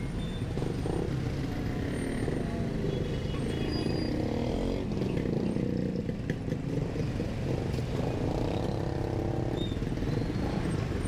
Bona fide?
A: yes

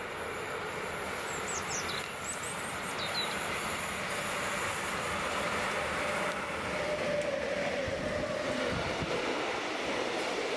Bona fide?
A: no